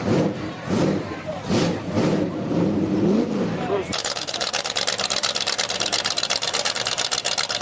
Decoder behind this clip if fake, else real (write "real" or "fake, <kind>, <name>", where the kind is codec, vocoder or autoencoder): fake, vocoder, BigVGAN v2